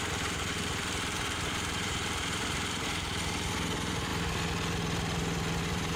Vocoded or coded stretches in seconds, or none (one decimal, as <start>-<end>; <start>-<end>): 0.0-4.1; 5.6-6.0